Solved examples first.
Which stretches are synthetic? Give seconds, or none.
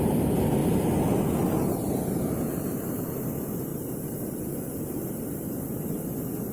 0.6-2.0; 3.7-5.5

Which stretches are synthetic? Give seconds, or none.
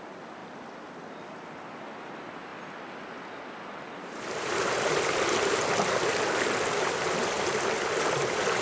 none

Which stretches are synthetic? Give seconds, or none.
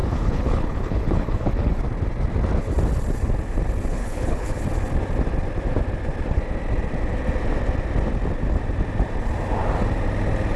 0.0-1.8; 3.9-4.6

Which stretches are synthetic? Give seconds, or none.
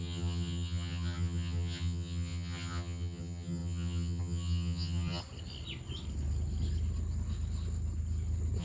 0.0-5.2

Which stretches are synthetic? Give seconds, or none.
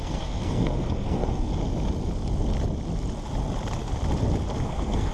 0.0-1.5; 4.6-5.1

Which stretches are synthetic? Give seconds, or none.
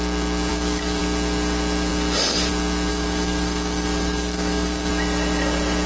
0.5-1.0; 2.9-4.9